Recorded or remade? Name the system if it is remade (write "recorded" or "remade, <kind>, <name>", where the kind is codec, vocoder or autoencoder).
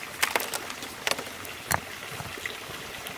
recorded